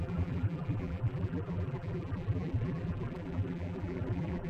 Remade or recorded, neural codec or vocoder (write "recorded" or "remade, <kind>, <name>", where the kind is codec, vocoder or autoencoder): remade, vocoder, BigVGAN v2